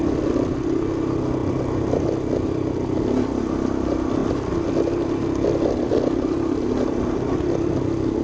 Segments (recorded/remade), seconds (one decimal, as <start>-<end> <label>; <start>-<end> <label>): 0.0-8.2 recorded